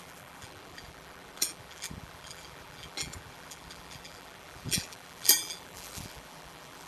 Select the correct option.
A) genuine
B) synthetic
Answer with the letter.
B